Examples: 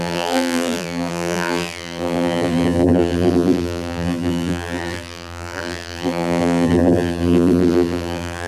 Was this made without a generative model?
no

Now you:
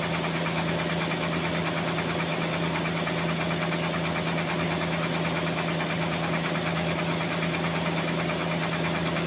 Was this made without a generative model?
yes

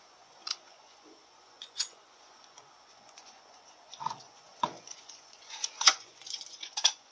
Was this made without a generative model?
no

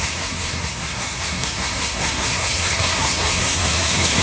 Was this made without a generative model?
no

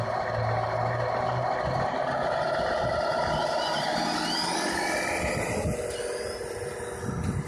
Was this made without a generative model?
yes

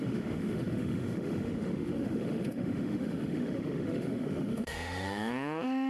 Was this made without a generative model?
no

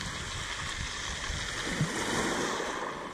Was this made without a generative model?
yes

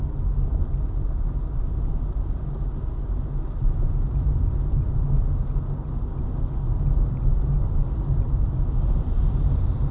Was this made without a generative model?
yes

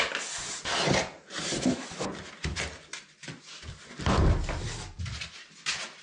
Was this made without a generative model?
yes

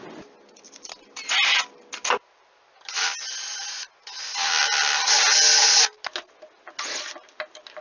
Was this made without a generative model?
yes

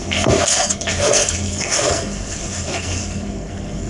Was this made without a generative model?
no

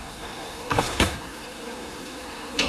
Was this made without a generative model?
no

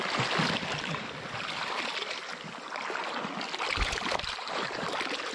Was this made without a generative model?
yes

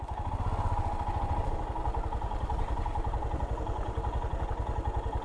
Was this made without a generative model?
yes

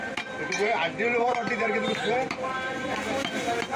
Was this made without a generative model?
yes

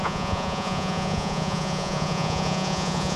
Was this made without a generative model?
no